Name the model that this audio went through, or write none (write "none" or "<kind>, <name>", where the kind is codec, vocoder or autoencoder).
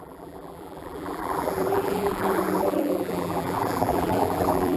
vocoder, BigVGAN v2